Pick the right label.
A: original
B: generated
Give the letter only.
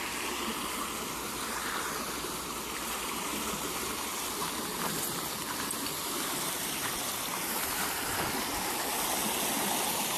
A